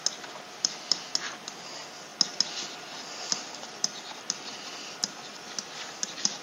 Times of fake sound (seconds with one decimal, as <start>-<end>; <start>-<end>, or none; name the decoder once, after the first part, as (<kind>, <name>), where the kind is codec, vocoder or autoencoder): none